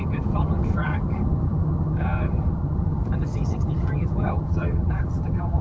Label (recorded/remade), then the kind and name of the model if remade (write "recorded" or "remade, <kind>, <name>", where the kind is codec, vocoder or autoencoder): remade, vocoder, HiFi-GAN